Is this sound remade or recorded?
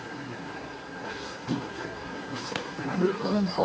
remade